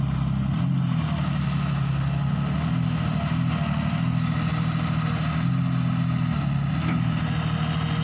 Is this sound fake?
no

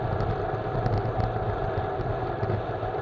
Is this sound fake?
no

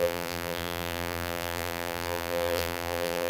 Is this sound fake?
yes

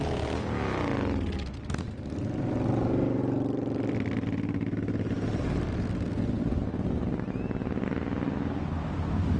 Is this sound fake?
no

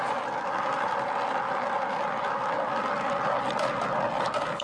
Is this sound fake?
no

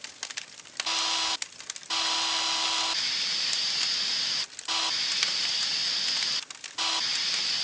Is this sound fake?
no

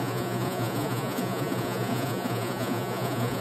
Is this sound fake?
yes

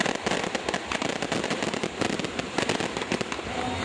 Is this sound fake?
no